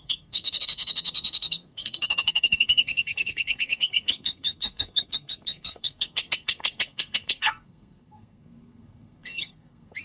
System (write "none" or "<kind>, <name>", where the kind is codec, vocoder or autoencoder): codec, SNAC